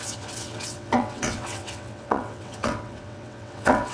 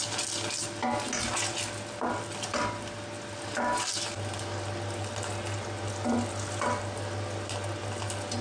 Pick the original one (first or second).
second